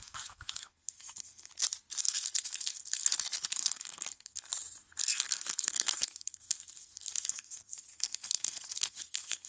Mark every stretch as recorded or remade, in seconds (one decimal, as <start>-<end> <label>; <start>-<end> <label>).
0.0-1.5 remade; 1.5-2.0 recorded; 2.0-4.5 remade; 4.5-5.0 recorded; 5.0-9.5 remade